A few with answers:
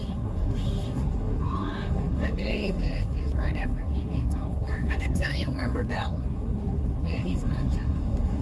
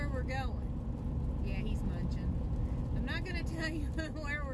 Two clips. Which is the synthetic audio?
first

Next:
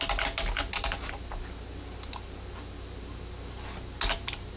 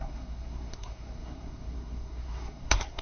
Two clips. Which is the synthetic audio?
second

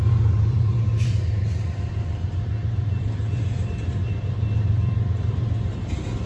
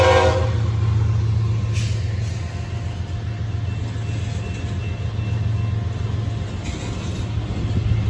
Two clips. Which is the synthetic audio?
first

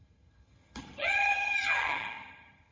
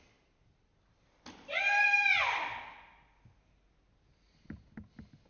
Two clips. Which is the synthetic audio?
first